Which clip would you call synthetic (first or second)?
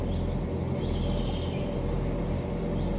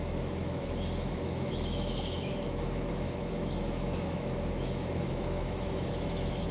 second